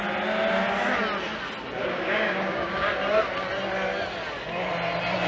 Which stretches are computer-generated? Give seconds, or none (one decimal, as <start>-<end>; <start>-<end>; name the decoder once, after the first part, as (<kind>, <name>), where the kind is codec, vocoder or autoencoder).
1.8-2.9 (codec, DAC)

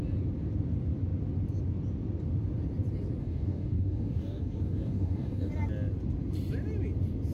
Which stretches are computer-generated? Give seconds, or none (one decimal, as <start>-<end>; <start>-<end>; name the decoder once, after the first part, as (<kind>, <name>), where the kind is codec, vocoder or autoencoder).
3.2-5.5 (codec, DAC)